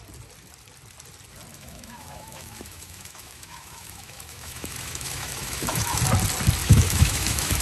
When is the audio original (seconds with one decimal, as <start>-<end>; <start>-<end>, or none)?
0.0-1.5; 6.0-6.6